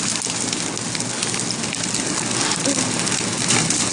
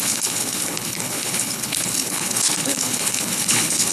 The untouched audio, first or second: first